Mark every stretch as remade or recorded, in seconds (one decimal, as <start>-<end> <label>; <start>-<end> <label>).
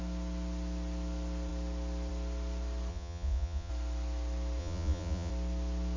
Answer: 0.0-2.9 recorded; 2.9-3.7 remade; 3.7-4.6 recorded; 4.6-5.3 remade; 5.3-6.0 recorded